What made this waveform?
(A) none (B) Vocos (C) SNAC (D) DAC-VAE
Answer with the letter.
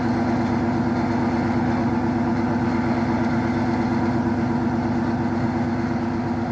A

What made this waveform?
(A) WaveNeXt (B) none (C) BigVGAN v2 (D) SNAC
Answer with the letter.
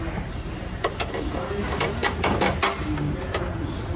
B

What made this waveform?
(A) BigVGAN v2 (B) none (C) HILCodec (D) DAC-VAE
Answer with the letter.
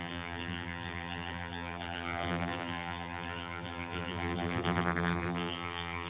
A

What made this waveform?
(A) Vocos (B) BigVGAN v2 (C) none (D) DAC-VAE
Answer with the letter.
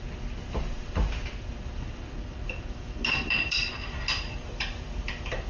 B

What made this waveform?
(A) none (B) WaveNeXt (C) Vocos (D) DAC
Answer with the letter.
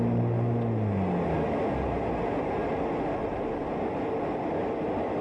A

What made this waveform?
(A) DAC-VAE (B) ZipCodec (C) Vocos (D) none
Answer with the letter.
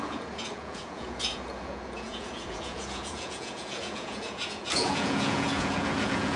C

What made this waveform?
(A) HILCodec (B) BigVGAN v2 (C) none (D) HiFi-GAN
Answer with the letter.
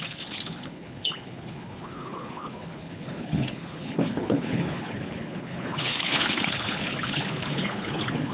A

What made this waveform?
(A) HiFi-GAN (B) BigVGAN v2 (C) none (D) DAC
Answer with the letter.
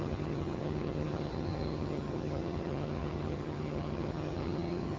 A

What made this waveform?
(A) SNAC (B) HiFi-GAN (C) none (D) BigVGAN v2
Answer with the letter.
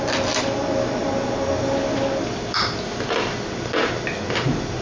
C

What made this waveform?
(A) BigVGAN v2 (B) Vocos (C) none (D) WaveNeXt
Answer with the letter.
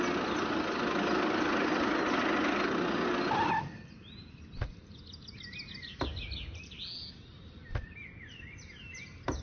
C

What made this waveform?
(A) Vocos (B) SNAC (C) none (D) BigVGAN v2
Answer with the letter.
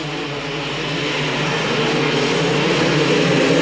C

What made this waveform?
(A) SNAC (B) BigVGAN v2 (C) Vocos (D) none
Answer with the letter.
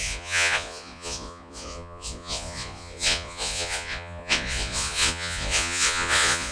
C